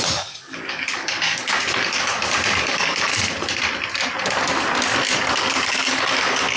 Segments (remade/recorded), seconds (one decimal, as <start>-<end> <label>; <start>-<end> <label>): 0.0-2.1 remade; 2.1-2.6 recorded; 2.6-3.1 remade; 3.1-5.3 recorded; 5.3-6.6 remade